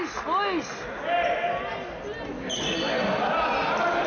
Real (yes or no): yes